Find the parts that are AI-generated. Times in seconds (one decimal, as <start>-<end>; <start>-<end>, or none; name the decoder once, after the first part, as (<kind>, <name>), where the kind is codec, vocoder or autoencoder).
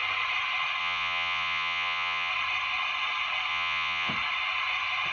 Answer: 0.8-2.3 (vocoder, Vocos); 3.5-4.1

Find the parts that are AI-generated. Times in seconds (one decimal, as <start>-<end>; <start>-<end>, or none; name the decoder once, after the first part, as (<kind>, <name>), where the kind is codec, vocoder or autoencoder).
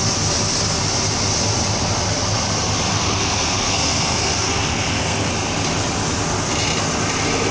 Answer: 2.9-5.3 (codec, SNAC)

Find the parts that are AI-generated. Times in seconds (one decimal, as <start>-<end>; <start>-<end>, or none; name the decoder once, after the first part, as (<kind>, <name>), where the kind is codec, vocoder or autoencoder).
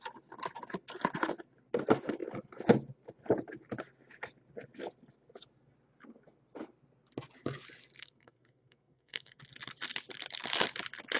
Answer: 8.0-9.4 (codec, SNAC)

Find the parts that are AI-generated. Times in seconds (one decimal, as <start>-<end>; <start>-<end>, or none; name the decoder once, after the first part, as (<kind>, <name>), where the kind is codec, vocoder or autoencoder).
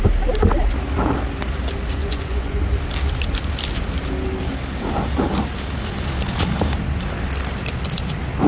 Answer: 2.0-2.6 (vocoder, Vocos)